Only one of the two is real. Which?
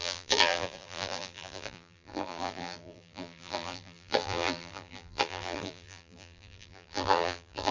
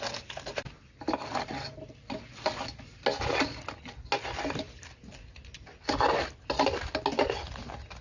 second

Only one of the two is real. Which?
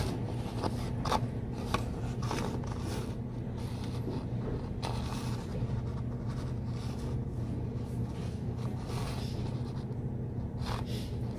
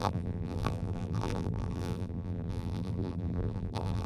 first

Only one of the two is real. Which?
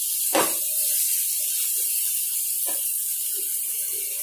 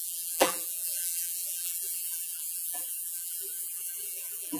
first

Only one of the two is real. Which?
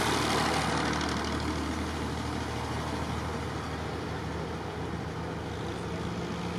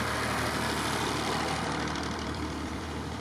first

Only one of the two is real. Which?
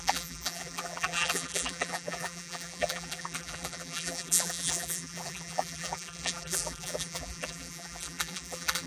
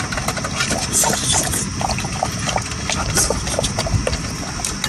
second